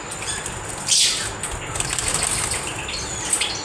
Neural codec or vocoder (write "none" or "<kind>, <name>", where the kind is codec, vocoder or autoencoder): none